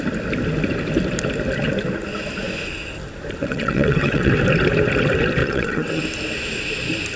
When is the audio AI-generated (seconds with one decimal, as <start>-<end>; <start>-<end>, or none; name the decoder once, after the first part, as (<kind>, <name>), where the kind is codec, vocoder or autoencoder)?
3.4-4.3 (vocoder, WaveNeXt); 5.4-6.0